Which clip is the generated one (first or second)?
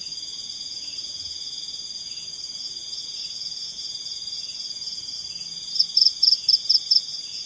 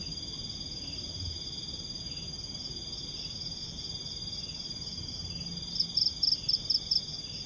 first